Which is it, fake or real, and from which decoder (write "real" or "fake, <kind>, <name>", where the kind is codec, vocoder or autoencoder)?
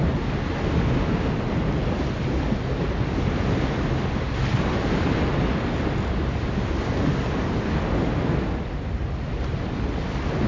real